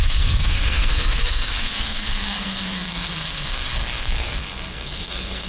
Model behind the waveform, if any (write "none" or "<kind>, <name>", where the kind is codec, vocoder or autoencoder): codec, SNAC